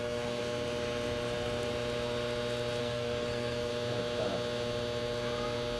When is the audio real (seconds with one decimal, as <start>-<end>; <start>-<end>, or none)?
0.4-2.8; 3.7-5.8